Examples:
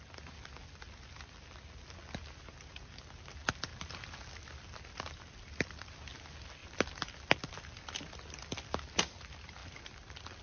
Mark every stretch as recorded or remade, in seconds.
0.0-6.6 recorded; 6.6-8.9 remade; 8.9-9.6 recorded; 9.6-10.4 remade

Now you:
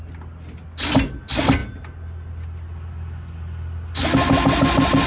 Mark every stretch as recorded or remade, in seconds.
0.0-5.1 recorded

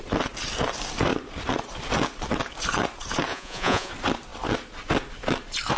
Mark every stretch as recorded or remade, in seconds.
0.0-3.3 recorded; 3.3-3.9 remade; 3.9-5.8 recorded

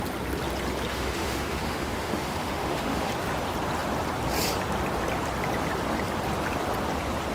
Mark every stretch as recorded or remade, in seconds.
0.0-0.9 recorded; 0.9-3.1 remade; 3.1-7.3 recorded

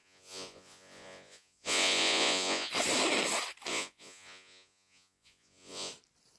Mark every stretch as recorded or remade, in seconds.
0.0-2.7 remade; 2.7-3.7 recorded; 3.7-5.9 remade; 5.9-6.4 recorded